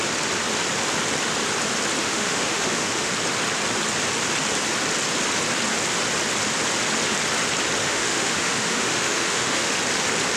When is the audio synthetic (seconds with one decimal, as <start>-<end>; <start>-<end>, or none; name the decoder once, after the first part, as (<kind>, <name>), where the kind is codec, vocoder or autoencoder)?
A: 2.0-3.1 (autoencoder, DAC-VAE); 7.8-9.7